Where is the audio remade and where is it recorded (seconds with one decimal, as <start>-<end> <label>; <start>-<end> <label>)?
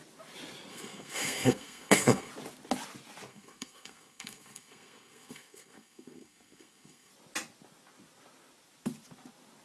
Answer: 0.0-0.7 recorded; 0.7-2.3 remade; 2.3-3.3 recorded; 3.3-7.1 remade; 7.1-9.6 recorded